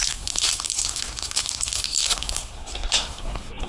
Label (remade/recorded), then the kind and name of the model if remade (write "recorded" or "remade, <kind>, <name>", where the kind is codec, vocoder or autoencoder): remade, codec, SNAC